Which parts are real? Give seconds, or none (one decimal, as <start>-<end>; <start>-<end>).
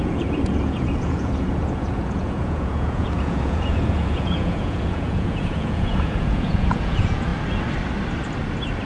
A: 7.3-8.9